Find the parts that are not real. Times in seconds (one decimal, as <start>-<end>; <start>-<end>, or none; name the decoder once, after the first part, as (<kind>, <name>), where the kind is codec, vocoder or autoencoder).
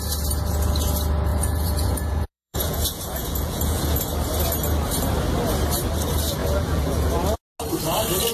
1.3-4.0 (vocoder, Vocos); 6.4-7.1